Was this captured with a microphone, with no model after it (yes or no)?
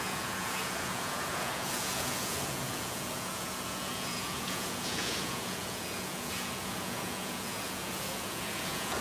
no